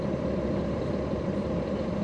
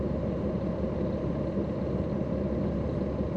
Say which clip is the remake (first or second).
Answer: first